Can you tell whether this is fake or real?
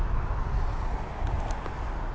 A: real